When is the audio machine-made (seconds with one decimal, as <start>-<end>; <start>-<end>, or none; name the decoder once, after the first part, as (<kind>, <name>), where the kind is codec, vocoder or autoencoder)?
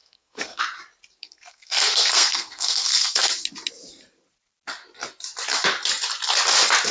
0.0-0.6 (codec, SNAC); 1.2-3.3